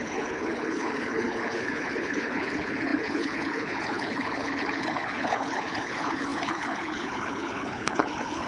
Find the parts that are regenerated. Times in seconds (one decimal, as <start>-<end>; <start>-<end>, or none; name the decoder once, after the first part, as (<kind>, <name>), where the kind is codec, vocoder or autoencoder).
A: 0.0-8.5 (codec, HILCodec)